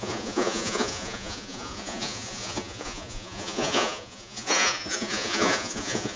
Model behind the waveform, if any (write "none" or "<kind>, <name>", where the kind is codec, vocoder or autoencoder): vocoder, Vocos